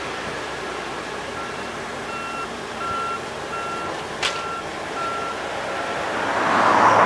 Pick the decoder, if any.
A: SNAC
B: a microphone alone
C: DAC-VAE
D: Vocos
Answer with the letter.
B